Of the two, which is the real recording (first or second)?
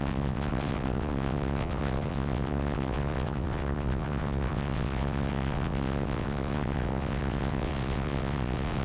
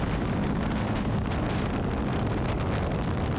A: second